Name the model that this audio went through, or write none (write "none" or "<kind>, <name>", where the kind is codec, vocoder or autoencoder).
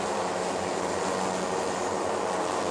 none